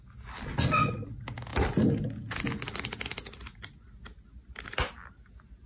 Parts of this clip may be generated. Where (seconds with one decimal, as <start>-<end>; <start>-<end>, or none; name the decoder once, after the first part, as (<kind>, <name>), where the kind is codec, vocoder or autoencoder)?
none